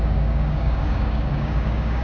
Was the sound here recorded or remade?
remade